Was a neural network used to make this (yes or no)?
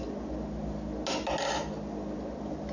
no